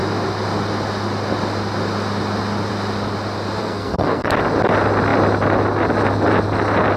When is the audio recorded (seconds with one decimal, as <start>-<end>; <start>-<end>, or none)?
0.0-3.6; 4.3-7.0